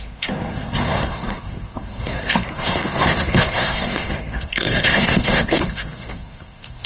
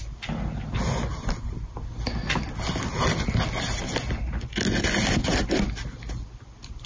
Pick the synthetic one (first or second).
first